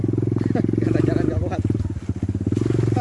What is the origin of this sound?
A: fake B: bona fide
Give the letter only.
B